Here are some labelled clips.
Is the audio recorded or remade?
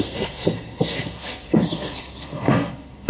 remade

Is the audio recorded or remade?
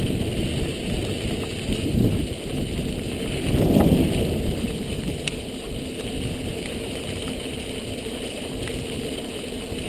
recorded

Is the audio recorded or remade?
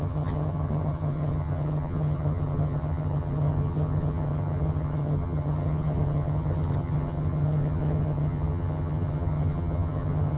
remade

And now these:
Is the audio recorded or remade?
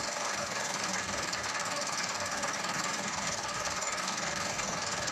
remade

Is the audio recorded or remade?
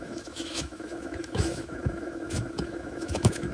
remade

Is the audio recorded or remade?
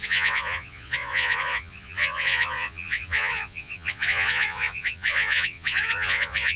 remade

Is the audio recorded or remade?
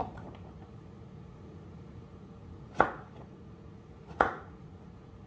remade